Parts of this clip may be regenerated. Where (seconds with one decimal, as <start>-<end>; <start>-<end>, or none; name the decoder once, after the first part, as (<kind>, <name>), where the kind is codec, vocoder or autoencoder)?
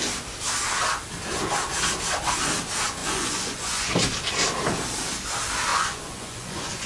3.0-3.9 (vocoder, Vocos); 5.7-6.9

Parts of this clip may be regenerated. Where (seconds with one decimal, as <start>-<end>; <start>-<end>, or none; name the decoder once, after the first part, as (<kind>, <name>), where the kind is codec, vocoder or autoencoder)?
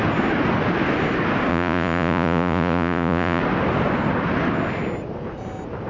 1.5-3.4 (vocoder, Vocos)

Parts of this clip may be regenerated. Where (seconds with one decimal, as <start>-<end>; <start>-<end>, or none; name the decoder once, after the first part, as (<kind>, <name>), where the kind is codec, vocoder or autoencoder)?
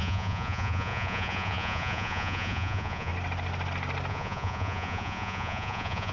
0.0-3.1 (vocoder, Vocos); 4.1-6.1